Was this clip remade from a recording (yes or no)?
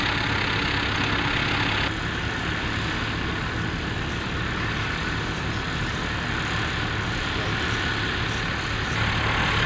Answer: no